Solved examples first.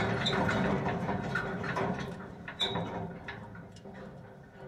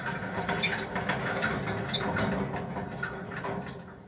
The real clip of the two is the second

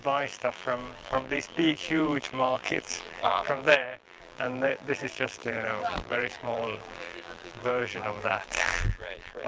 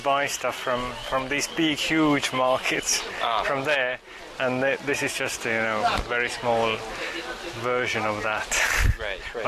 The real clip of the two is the second